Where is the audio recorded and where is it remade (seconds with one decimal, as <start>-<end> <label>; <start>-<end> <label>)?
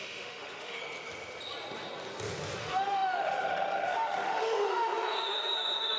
0.0-0.8 remade; 0.8-2.6 recorded; 2.6-6.0 remade